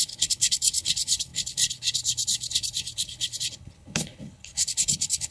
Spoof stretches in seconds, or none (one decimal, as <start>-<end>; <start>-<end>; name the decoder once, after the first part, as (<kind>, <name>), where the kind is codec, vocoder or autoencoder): 0.0-5.3 (codec, HILCodec)